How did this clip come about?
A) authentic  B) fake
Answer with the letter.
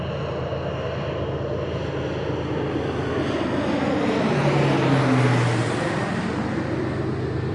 A